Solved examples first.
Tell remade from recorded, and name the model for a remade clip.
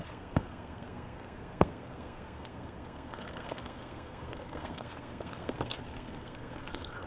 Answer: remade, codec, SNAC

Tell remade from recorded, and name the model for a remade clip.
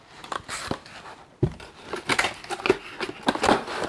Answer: recorded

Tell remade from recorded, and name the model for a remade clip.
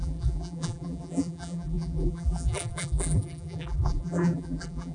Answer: remade, vocoder, BigVGAN v2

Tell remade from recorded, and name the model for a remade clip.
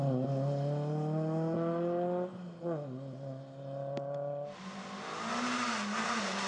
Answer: recorded